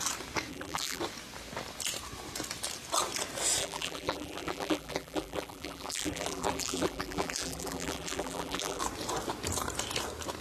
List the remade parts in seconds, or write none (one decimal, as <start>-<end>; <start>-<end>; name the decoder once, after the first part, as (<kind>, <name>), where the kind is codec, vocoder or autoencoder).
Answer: 0.5-1.0 (vocoder, BigVGAN v2); 3.6-8.8

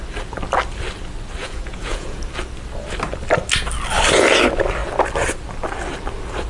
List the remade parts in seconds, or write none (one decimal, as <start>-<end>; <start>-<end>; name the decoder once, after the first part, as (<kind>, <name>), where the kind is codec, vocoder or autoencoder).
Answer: 1.4-2.2 (vocoder, Vocos)

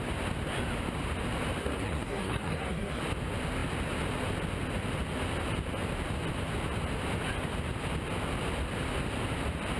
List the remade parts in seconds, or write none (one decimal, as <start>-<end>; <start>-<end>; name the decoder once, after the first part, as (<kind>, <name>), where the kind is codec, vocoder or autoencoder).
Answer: 1.6-3.0 (codec, SNAC)

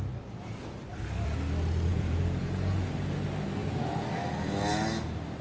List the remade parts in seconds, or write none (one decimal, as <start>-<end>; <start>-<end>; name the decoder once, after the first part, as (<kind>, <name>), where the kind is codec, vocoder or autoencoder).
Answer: 1.9-2.9 (vocoder, Vocos); 3.6-4.1

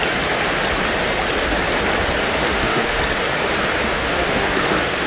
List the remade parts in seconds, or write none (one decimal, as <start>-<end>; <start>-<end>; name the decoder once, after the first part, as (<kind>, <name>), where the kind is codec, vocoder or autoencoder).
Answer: 2.2-3.0 (autoencoder, DAC-VAE); 3.8-5.1

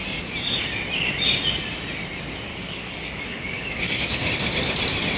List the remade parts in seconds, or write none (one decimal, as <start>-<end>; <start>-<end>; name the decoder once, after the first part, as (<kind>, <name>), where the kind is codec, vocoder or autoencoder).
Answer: 2.5-4.3 (codec, DAC)

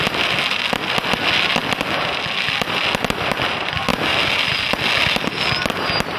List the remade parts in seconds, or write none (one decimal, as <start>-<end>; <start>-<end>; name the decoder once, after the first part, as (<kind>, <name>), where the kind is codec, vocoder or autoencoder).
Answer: none

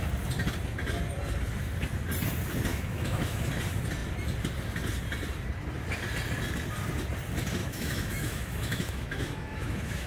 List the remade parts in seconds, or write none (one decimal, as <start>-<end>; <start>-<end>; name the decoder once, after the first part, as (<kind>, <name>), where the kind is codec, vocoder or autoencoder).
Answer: 2.7-3.5 (autoencoder, DAC-VAE); 7.6-10.1